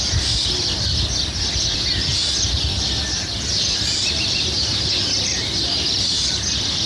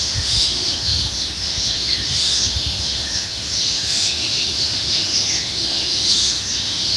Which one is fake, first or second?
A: second